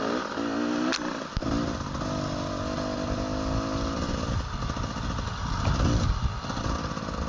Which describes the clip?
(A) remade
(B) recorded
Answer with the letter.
B